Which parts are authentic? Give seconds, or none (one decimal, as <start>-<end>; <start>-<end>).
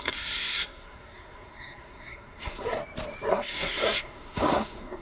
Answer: 2.8-3.3